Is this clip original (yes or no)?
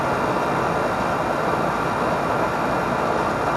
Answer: yes